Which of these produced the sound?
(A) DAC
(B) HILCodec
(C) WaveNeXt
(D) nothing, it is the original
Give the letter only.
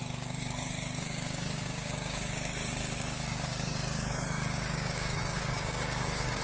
A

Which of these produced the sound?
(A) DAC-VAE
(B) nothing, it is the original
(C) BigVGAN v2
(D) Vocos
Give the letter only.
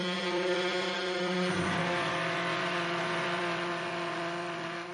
D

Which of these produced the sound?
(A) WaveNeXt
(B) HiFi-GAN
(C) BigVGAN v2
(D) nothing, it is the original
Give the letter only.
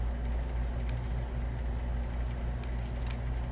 D